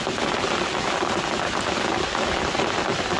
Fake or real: real